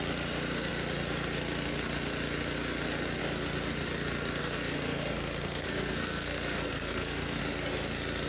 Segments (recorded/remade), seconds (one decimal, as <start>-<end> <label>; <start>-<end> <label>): 0.0-4.4 recorded; 4.4-7.4 remade; 7.4-8.3 recorded